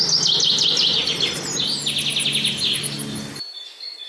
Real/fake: real